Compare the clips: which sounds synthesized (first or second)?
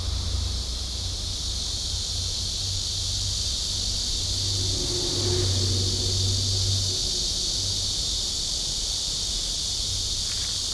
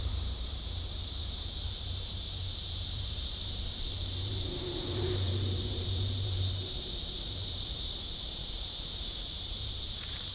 second